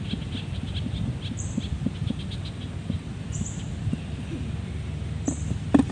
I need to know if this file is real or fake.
real